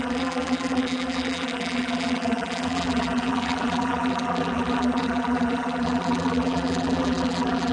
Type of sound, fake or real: fake